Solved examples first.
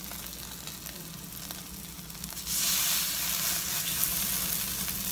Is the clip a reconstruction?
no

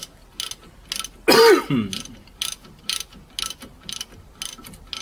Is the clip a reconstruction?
no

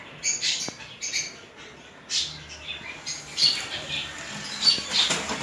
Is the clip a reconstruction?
no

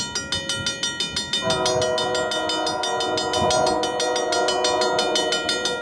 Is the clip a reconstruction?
no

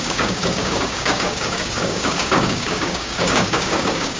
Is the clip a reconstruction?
yes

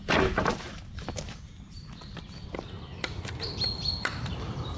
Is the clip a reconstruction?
yes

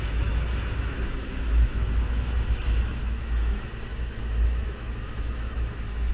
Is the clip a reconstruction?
yes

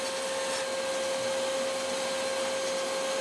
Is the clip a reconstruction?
no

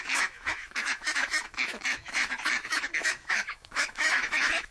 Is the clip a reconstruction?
yes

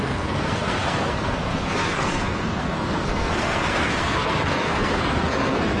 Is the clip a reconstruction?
yes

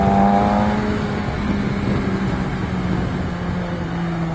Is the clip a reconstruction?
no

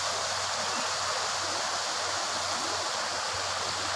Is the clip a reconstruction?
no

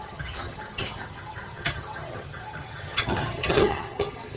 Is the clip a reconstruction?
yes